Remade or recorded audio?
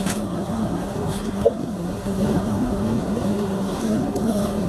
remade